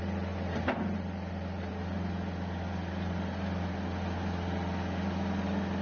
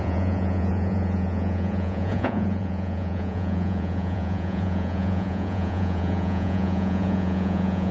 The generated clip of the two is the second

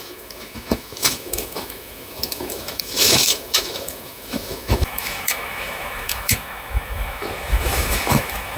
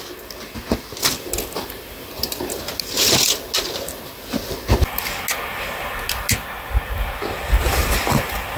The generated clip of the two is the first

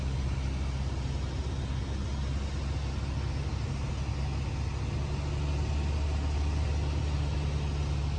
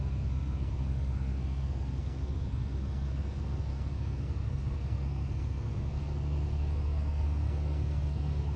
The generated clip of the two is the second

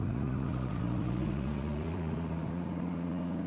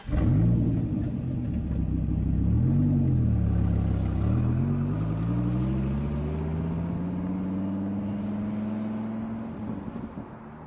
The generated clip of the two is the first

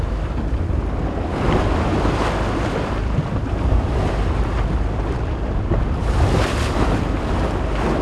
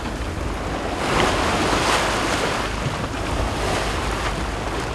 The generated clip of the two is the first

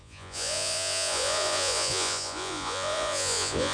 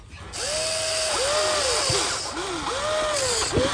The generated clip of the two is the first